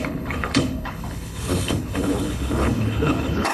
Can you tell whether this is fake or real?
fake